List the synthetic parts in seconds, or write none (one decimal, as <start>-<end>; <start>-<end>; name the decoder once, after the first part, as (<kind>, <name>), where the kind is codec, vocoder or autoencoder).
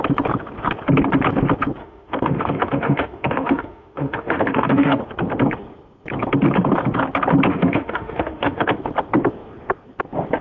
1.8-5.0 (autoencoder, DAC-VAE); 7.5-8.8